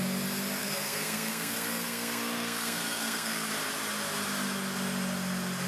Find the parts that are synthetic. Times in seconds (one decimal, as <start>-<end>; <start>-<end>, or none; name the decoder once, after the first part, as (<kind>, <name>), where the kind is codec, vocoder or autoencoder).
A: 0.6-3.5 (codec, SNAC)